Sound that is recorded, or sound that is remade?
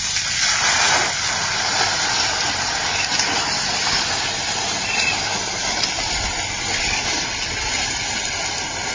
recorded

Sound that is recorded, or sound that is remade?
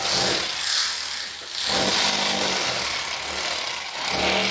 recorded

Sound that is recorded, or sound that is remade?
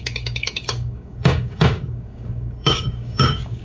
remade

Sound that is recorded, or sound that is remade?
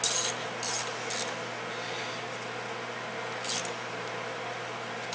recorded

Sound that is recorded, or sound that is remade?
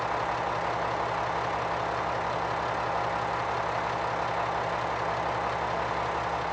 recorded